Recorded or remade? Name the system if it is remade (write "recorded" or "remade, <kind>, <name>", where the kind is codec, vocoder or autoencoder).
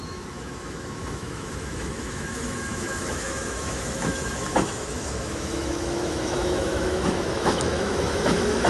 remade, autoencoder, DAC-VAE